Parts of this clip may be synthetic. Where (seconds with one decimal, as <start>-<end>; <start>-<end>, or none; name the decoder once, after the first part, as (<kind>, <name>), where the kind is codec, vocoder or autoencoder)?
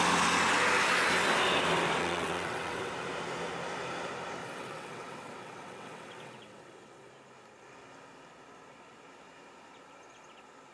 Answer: 2.0-2.9 (vocoder, WaveNeXt); 4.4-7.1